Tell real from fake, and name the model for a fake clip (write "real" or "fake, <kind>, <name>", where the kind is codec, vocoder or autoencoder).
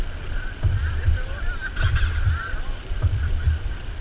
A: fake, vocoder, BigVGAN v2